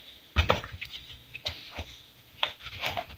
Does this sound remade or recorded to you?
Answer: remade